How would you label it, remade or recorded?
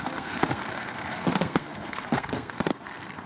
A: remade